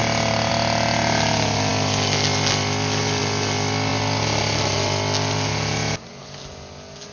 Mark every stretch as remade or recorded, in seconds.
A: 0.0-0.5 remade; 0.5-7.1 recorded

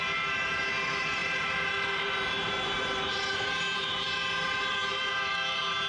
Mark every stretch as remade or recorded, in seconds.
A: 0.0-5.9 remade

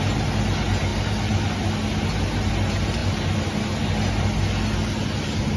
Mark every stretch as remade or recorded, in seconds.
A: 0.0-5.6 recorded

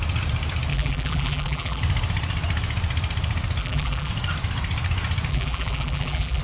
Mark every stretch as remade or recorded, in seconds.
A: 0.0-0.7 recorded; 0.7-1.8 remade; 1.8-3.6 recorded; 3.6-4.1 remade; 4.1-5.3 recorded; 5.3-6.4 remade

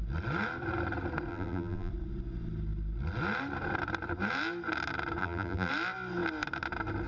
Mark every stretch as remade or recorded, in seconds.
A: 0.0-1.3 recorded; 1.3-1.9 remade; 1.9-5.2 recorded; 5.2-5.7 remade; 5.7-7.1 recorded

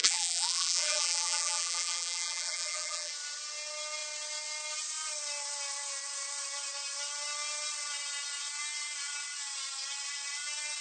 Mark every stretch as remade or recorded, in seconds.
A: 0.0-3.1 remade; 3.1-10.8 recorded

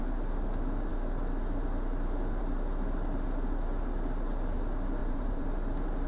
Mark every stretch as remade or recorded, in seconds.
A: 0.0-5.0 recorded; 5.0-5.5 remade; 5.5-6.1 recorded

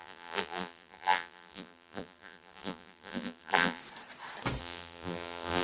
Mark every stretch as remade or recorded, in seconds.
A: 0.0-3.8 remade; 3.8-4.6 recorded; 4.6-5.6 remade